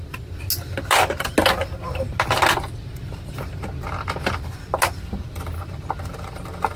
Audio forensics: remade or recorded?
recorded